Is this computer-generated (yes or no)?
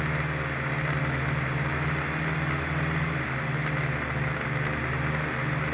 no